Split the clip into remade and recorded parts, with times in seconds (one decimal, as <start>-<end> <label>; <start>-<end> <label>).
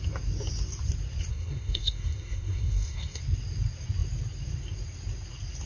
0.0-1.3 recorded; 1.3-3.2 remade; 3.2-5.7 recorded